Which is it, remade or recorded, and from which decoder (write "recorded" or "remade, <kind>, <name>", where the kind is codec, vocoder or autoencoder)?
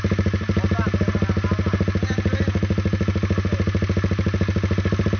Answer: recorded